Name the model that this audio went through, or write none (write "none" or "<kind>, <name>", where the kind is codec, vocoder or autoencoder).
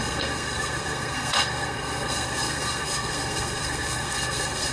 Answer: codec, SNAC